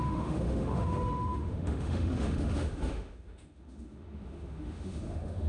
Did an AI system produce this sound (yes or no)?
yes